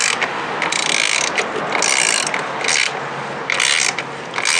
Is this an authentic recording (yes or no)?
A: yes